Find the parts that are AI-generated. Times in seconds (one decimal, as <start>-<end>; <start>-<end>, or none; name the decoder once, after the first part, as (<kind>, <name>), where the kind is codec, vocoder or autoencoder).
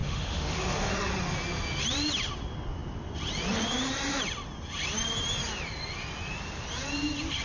0.0-0.9 (autoencoder, DAC-VAE)